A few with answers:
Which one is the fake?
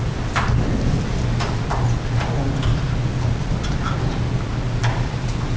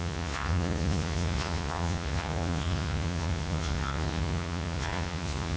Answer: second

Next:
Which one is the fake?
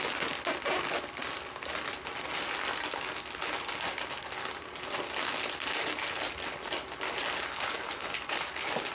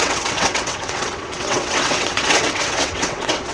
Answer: second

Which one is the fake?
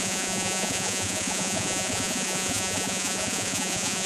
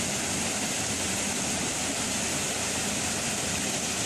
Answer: first